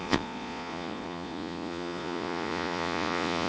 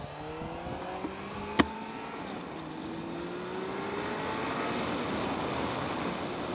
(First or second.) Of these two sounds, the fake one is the first